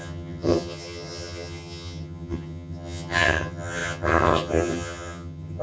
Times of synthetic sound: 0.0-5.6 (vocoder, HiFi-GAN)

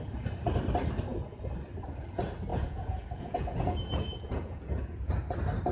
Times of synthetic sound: 2.5-5.1 (vocoder, Vocos)